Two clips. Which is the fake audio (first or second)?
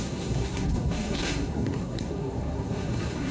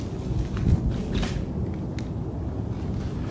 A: first